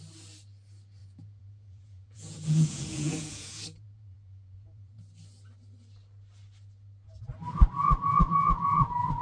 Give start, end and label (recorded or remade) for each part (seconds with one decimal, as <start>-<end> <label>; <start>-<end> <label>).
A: 0.0-1.0 recorded; 1.0-5.0 remade; 5.0-9.2 recorded